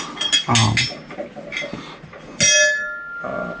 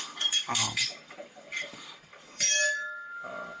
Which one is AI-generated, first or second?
second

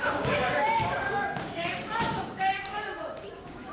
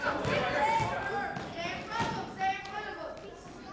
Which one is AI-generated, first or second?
first